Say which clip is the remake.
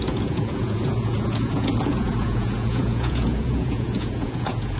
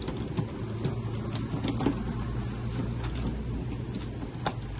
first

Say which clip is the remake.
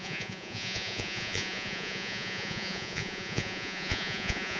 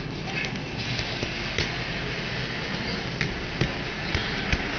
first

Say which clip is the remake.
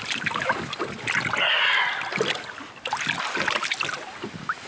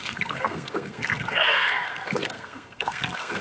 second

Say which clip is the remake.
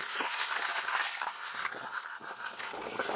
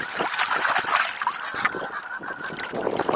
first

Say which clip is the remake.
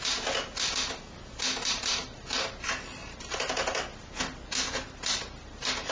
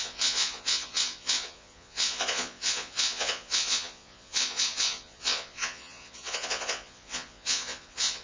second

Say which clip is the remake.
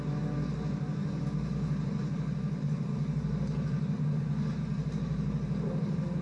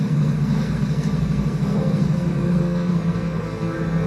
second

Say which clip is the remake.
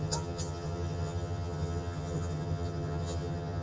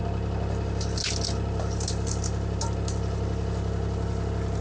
first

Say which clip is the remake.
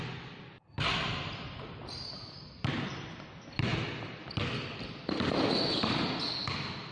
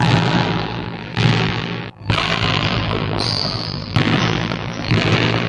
second